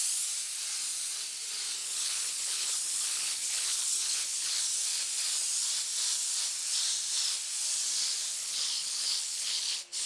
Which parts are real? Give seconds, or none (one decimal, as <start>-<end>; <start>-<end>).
0.0-1.8; 4.6-8.3